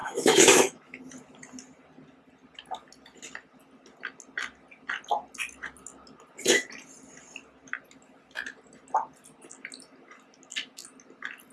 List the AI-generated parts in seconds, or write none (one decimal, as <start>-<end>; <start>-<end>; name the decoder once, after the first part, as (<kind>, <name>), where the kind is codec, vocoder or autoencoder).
0.0-1.0 (autoencoder, DAC-VAE)